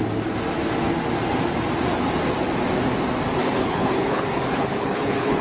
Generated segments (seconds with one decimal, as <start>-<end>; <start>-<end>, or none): 3.4-5.4